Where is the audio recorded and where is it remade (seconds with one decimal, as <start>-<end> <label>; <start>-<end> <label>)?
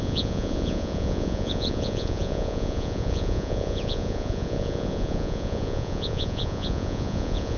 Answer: 0.0-7.6 remade